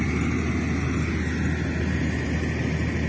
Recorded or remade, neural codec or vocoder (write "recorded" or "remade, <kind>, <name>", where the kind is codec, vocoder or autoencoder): recorded